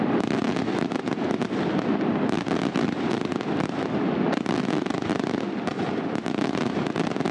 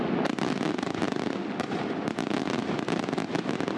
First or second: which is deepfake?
first